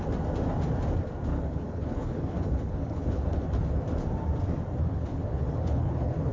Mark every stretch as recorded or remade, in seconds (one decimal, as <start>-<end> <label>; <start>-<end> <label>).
0.0-1.3 recorded; 1.3-3.8 remade; 3.8-4.8 recorded; 4.8-6.3 remade

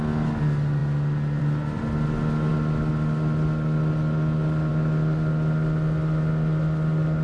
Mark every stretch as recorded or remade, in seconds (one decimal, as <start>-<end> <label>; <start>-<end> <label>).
0.0-7.2 recorded

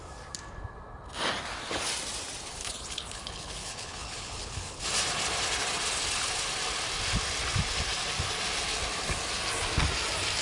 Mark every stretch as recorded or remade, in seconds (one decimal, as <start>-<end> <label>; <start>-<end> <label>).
0.0-2.6 recorded; 2.6-4.8 remade; 4.8-10.4 recorded

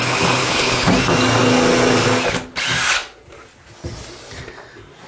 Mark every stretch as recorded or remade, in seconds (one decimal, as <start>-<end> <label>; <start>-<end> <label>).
0.0-0.9 remade; 0.9-5.1 recorded

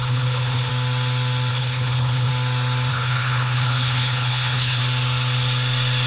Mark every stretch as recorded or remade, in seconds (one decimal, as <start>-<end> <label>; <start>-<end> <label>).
0.0-0.7 remade; 0.7-1.5 recorded; 1.5-2.3 remade; 2.3-2.9 recorded; 2.9-4.8 remade; 4.8-6.1 recorded

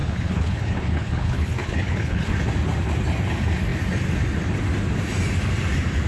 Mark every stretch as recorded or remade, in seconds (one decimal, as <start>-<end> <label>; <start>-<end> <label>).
0.0-2.3 remade; 2.3-6.1 recorded

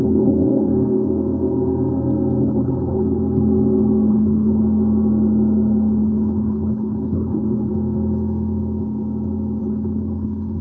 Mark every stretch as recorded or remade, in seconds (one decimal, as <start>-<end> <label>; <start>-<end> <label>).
0.0-0.7 remade; 0.7-2.4 recorded; 2.4-3.2 remade; 3.2-4.1 recorded; 4.1-4.6 remade; 4.6-6.0 recorded; 6.0-7.7 remade; 7.7-9.6 recorded; 9.6-10.6 remade